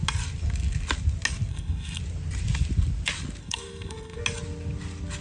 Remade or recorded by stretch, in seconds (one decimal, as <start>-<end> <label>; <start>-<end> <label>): 0.0-1.5 recorded; 1.5-2.0 remade; 2.0-3.4 recorded; 3.4-4.2 remade; 4.2-5.2 recorded